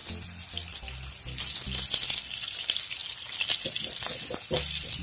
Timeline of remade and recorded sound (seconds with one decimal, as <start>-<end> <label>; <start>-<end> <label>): 0.0-5.0 recorded